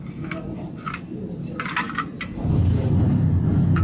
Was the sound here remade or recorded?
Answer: recorded